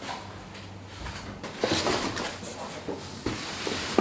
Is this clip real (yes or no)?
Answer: yes